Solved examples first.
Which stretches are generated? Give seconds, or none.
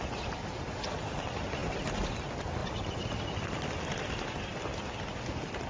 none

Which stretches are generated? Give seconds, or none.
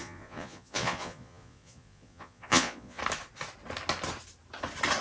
0.0-3.0 (vocoder, Vocos)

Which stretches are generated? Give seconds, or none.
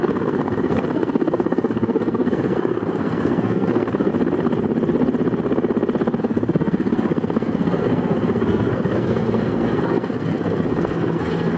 0.0-4.1 (codec, SNAC); 6.2-11.6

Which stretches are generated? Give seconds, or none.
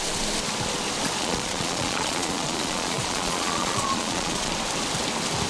1.2-4.5 (vocoder, Vocos)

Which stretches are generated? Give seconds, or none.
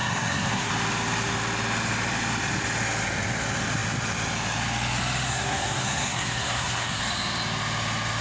0.0-0.7 (codec, SNAC); 5.3-7.0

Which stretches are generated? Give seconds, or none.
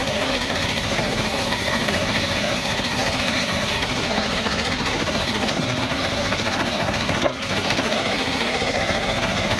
0.0-9.6 (codec, SNAC)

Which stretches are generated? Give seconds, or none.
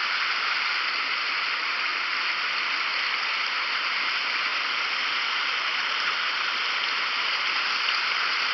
none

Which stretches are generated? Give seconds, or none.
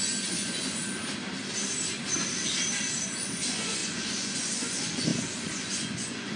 0.0-0.8 (vocoder, Vocos); 3.2-6.4